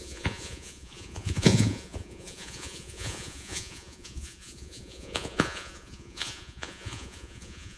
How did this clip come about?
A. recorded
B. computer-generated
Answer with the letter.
B